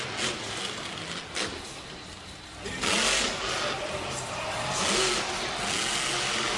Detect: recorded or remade recorded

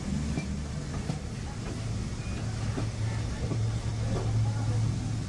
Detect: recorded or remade recorded